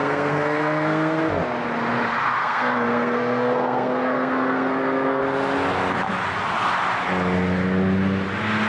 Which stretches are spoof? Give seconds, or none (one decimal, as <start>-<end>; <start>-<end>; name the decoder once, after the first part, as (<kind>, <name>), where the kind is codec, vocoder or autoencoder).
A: 0.0-1.2 (codec, SNAC); 2.4-5.2